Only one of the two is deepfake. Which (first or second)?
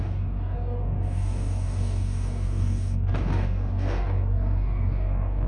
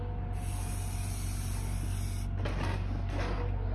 first